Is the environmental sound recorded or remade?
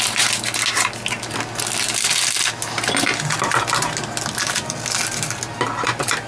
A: recorded